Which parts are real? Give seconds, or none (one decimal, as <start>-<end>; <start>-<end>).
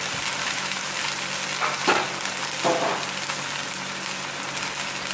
0.0-0.4; 0.9-5.1